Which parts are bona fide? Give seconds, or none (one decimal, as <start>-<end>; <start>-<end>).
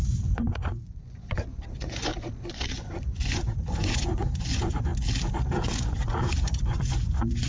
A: 2.1-2.7; 4.9-5.5